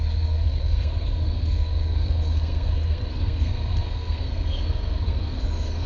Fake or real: fake